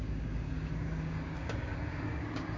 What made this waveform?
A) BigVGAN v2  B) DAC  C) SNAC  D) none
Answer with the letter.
B